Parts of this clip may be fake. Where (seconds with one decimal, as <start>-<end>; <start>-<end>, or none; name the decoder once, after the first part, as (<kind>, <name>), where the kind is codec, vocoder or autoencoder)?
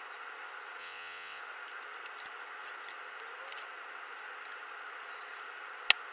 0.8-1.4 (vocoder, WaveNeXt)